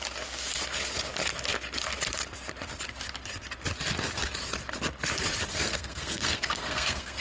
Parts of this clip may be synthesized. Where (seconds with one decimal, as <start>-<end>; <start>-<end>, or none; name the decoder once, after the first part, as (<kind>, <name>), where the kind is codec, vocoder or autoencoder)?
5.5-7.2 (codec, SNAC)